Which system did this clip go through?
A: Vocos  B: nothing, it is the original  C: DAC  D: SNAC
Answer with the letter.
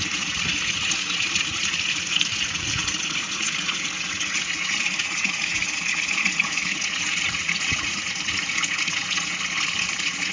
A